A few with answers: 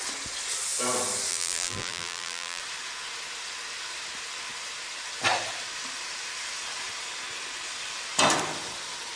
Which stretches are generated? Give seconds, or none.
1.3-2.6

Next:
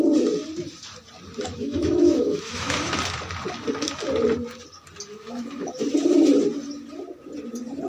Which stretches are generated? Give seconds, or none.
1.5-2.9; 5.1-5.8